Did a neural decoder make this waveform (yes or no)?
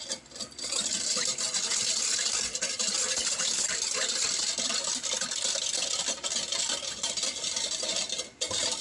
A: yes